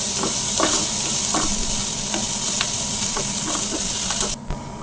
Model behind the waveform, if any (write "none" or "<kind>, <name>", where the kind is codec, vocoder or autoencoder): none